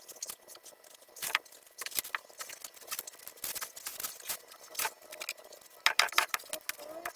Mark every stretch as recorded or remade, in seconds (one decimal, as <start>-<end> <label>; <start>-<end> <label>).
0.0-7.2 recorded